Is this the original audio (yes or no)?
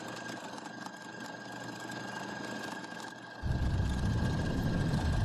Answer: yes